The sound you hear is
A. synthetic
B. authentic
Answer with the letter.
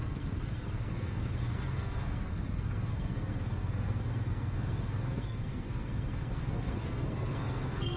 A